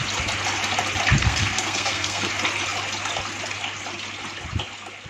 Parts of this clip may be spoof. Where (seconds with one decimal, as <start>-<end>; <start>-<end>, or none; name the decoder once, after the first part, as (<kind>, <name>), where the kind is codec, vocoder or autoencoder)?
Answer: 1.2-2.3 (codec, SNAC)